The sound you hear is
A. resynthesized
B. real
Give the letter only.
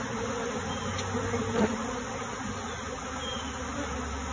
B